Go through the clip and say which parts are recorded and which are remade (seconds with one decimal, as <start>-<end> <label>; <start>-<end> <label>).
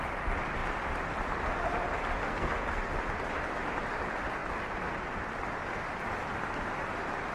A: 0.0-2.2 recorded; 2.2-2.9 remade; 2.9-7.3 recorded